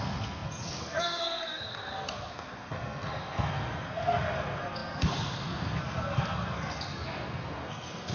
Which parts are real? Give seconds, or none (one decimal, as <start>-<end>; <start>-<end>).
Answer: none